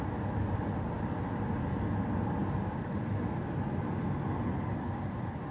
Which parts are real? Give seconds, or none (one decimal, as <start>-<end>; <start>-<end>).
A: 0.0-2.4; 2.9-5.5